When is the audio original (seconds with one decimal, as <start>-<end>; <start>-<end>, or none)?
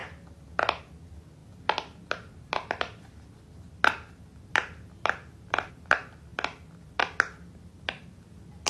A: 0.0-8.7